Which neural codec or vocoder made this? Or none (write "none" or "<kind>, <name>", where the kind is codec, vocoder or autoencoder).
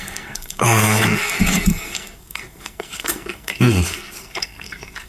codec, SNAC